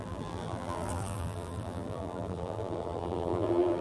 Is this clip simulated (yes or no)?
yes